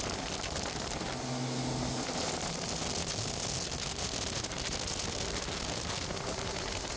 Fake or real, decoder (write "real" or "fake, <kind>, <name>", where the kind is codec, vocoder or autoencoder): real